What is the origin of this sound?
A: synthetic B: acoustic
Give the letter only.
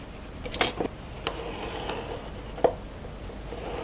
B